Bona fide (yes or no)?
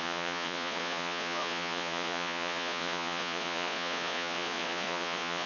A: no